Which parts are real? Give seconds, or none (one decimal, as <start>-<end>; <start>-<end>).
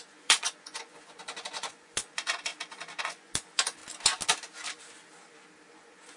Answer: 2.5-3.0; 3.8-5.7